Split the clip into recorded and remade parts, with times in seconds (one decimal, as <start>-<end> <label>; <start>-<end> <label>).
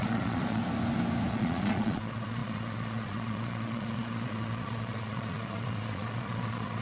0.0-0.6 remade; 0.6-1.3 recorded; 1.3-6.8 remade